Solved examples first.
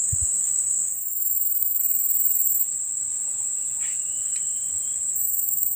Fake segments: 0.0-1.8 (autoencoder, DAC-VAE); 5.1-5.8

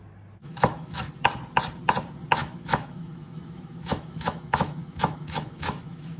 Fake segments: 0.4-1.1 (autoencoder, DAC-VAE); 2.4-6.2

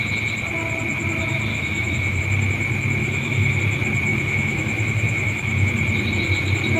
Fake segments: 1.5-2.2 (autoencoder, DAC-VAE); 3.0-3.6; 4.1-5.7